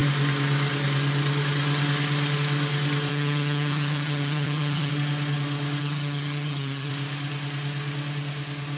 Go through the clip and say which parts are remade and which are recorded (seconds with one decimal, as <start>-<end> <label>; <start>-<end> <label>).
0.0-3.1 recorded; 3.1-4.9 remade; 4.9-5.8 recorded; 5.8-6.9 remade; 6.9-8.8 recorded

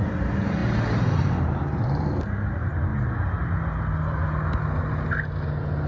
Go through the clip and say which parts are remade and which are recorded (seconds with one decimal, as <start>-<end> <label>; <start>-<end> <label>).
0.0-2.9 remade; 2.9-5.9 recorded

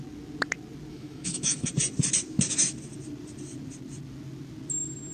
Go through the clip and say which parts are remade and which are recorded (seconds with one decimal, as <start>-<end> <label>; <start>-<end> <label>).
0.0-0.9 recorded; 0.9-1.7 remade; 1.7-5.1 recorded

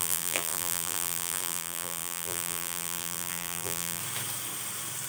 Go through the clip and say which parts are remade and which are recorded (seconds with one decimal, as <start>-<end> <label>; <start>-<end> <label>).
0.0-4.0 remade; 4.0-5.1 recorded

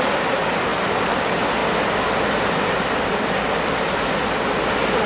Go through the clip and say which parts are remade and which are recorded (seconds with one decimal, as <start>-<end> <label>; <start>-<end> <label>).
0.0-0.7 recorded; 0.7-1.2 remade; 1.2-1.6 recorded; 1.6-4.1 remade; 4.1-5.1 recorded

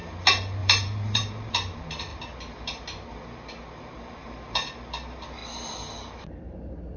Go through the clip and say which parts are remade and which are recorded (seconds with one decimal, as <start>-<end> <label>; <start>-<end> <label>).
0.0-0.6 recorded; 0.6-1.5 remade; 1.5-4.2 recorded; 4.2-4.7 remade; 4.7-7.0 recorded